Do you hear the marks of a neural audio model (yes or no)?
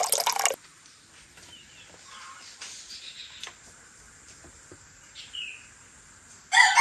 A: no